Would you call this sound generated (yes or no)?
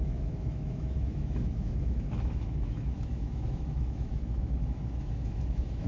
yes